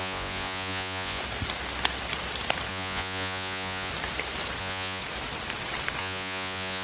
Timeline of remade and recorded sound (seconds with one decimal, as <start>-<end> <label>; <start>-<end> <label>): 0.0-1.2 remade; 1.2-2.7 recorded; 2.7-3.9 remade; 3.9-4.6 recorded; 4.6-5.0 remade; 5.0-6.0 recorded; 6.0-6.8 remade